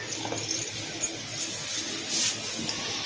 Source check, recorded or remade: recorded